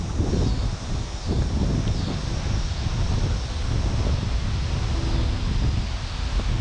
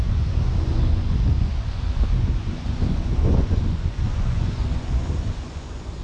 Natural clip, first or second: first